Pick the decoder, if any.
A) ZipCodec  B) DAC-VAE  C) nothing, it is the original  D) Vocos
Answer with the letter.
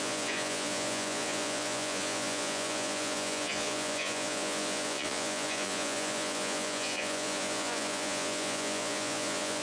D